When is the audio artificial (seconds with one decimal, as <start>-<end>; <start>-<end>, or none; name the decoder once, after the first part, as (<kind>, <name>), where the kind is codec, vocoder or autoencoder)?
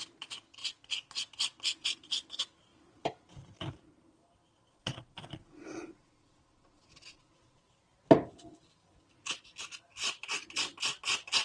4.7-7.6 (vocoder, Vocos)